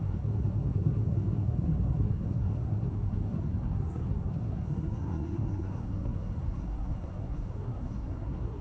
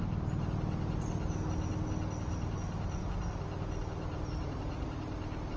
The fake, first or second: first